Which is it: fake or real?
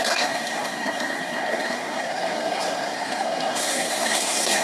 fake